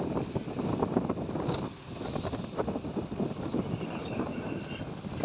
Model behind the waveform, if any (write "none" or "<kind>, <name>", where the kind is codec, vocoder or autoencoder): none